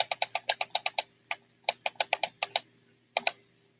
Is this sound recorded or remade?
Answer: recorded